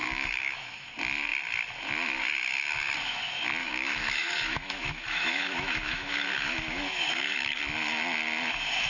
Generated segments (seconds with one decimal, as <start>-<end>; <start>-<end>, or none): 0.0-0.9; 3.6-7.6